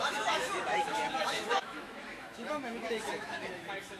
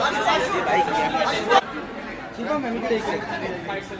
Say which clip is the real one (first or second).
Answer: second